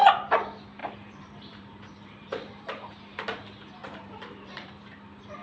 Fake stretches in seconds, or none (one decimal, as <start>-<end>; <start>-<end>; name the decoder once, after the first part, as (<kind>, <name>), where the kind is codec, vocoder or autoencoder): 0.8-3.0 (vocoder, BigVGAN v2); 3.8-4.7